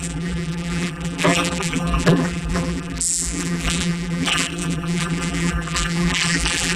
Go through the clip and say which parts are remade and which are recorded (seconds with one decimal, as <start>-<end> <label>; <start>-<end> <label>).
0.0-6.8 remade